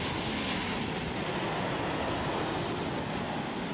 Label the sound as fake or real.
real